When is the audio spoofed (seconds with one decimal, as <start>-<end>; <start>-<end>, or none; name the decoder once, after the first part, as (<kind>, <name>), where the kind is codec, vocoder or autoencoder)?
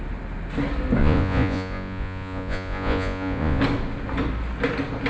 1.0-3.6 (vocoder, Vocos)